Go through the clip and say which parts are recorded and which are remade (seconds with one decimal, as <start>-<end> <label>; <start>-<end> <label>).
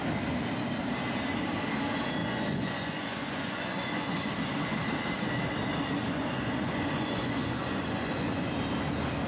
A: 0.0-2.2 recorded; 2.2-4.3 remade; 4.3-6.0 recorded; 6.0-8.5 remade; 8.5-9.3 recorded